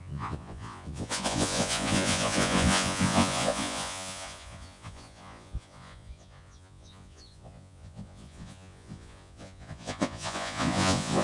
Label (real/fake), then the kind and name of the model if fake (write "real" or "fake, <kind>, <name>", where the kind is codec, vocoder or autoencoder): fake, vocoder, Vocos